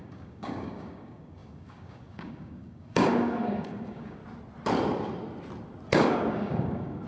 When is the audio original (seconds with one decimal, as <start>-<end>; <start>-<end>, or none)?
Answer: 4.2-5.9

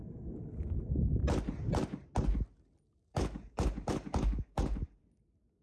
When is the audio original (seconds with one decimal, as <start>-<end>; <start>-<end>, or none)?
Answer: 0.0-3.1; 5.0-5.6

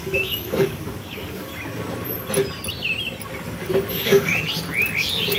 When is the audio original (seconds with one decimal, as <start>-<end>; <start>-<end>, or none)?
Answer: 1.5-3.9; 4.3-5.4

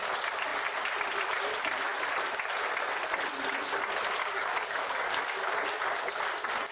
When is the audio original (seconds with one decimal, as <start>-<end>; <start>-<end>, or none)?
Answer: 0.0-4.2; 5.2-6.7

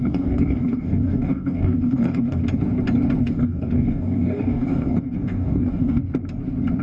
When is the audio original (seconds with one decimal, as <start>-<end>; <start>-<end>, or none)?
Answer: 2.4-3.2; 6.0-6.8

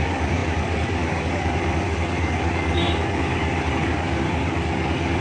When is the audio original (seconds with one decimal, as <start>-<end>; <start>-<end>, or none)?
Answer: none

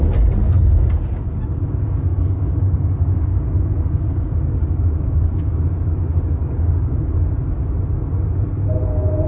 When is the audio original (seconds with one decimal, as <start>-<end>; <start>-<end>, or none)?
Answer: 0.0-2.1; 5.5-6.4; 7.1-9.3